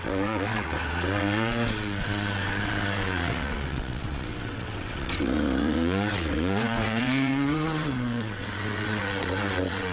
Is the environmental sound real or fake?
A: fake